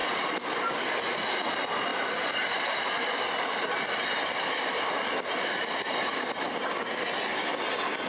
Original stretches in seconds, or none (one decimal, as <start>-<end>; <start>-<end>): 1.2-1.9; 6.3-8.1